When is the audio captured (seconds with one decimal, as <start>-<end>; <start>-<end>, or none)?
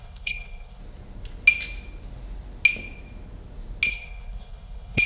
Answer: 0.8-3.9